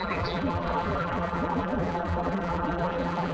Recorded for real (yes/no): no